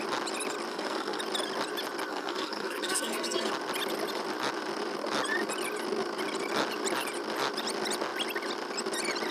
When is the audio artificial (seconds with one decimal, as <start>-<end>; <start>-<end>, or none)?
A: 0.7-1.2; 2.1-3.5